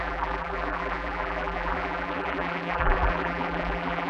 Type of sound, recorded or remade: remade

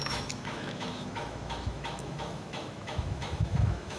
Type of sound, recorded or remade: remade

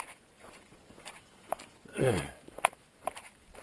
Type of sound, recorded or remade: remade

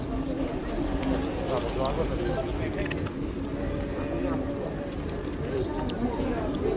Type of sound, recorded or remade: recorded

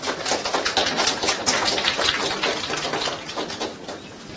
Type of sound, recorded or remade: recorded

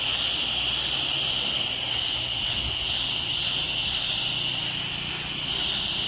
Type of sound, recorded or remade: recorded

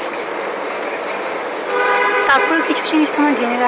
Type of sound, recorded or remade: recorded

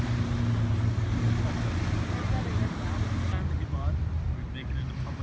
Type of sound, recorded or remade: recorded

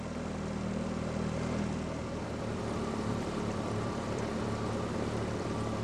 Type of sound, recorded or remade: remade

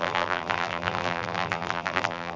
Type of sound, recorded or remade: remade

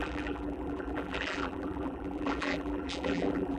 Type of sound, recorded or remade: remade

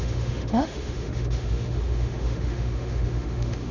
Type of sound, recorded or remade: remade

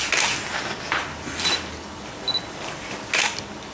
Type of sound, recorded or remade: recorded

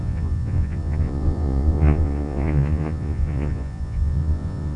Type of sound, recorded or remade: remade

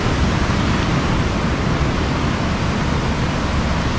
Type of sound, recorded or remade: recorded